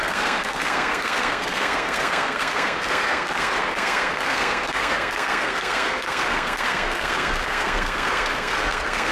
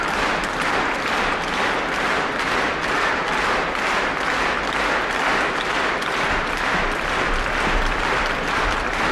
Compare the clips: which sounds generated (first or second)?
first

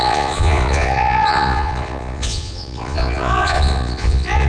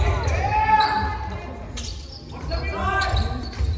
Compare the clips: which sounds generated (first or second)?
first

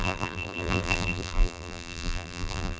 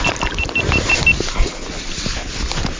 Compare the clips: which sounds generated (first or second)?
first